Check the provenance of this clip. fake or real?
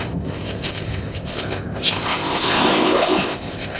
fake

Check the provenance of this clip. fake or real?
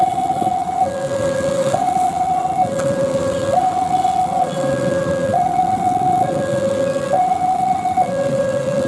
fake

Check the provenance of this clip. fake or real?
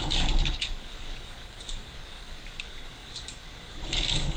fake